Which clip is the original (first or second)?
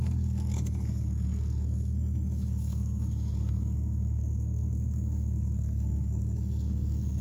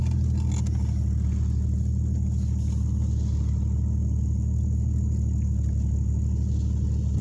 second